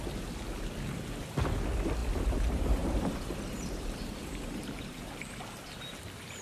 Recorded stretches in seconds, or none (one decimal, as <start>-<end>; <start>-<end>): 0.0-2.0; 5.3-6.4